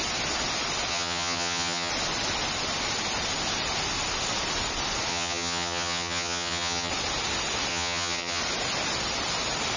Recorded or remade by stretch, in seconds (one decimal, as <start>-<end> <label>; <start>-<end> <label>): 0.0-0.9 recorded; 0.9-1.9 remade; 1.9-5.1 recorded; 5.1-6.9 remade; 6.9-7.7 recorded; 7.7-8.4 remade; 8.4-9.8 recorded

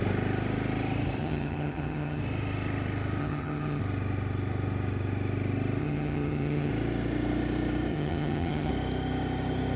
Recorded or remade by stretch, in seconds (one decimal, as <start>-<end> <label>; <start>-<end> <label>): 0.0-1.2 recorded; 1.2-2.2 remade; 2.2-3.2 recorded; 3.2-3.8 remade; 3.8-5.8 recorded; 5.8-6.7 remade; 6.7-7.9 recorded; 7.9-8.7 remade; 8.7-9.8 recorded

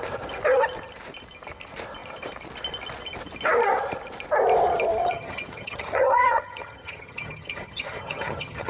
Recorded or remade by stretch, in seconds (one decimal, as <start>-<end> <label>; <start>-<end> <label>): 0.0-5.0 recorded; 5.0-8.7 remade

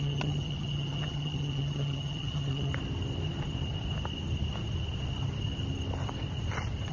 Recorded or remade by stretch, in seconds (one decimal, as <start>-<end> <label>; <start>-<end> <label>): 0.0-2.7 remade; 2.7-6.9 recorded

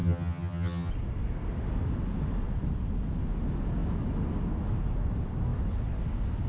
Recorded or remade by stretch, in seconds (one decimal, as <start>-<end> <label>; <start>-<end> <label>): 0.0-0.9 remade; 0.9-6.5 recorded

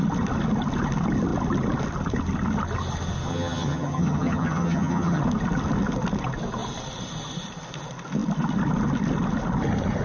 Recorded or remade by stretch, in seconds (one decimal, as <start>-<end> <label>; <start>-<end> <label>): 0.0-3.3 recorded; 3.3-5.2 remade; 5.2-10.0 recorded